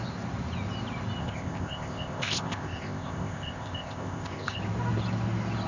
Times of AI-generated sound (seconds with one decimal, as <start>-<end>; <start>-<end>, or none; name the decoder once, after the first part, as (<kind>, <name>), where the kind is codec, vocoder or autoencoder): 1.2-4.6 (codec, ZipCodec)